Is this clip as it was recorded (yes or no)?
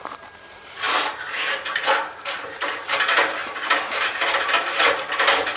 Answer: no